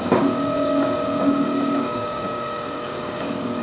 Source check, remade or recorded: remade